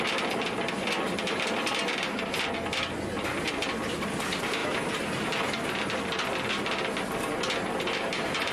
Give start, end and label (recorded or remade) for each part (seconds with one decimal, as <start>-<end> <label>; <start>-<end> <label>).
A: 0.0-4.6 remade; 4.6-7.8 recorded; 7.8-8.5 remade